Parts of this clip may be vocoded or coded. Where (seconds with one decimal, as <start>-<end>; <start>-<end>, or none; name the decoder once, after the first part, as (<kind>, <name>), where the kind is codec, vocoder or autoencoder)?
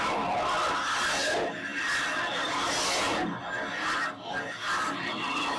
none